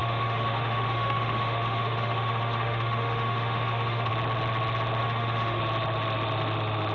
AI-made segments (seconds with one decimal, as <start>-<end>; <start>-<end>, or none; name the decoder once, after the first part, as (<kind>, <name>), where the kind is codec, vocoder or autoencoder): 0.0-4.1 (autoencoder, DAC-VAE); 5.0-5.6